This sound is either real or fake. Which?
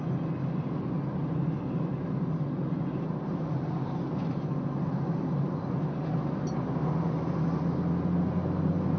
real